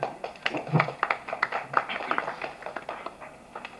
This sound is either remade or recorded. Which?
recorded